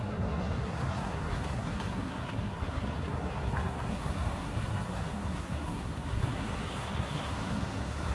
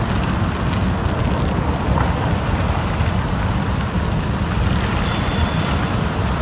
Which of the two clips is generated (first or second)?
first